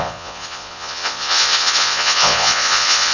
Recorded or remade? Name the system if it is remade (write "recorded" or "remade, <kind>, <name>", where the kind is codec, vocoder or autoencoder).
remade, vocoder, Vocos